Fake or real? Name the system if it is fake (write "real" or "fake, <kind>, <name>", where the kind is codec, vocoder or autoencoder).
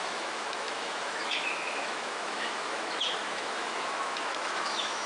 fake, autoencoder, DAC-VAE